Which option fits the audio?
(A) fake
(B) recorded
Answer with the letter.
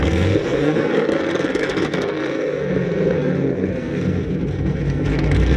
A